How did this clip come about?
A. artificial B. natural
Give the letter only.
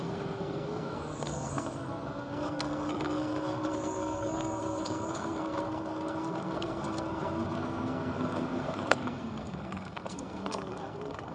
A